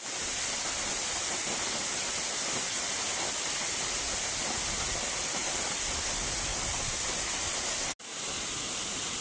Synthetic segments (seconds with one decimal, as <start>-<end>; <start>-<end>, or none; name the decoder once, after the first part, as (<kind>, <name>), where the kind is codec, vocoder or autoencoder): 5.4-6.1 (vocoder, BigVGAN v2); 6.5-7.0; 8.1-9.2